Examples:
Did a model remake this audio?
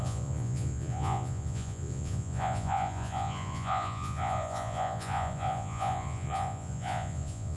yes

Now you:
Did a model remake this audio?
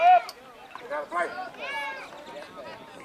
no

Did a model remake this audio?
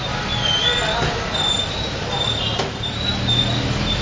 no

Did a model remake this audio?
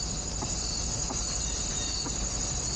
no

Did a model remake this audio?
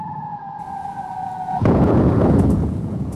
yes